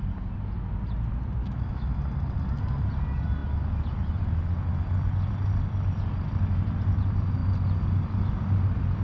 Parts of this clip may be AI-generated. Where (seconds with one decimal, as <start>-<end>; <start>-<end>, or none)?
1.4-2.0